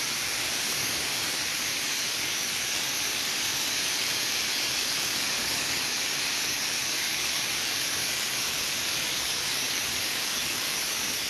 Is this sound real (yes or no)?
no